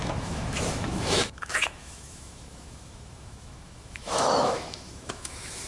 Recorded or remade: remade